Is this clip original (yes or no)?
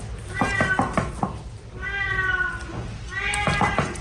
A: yes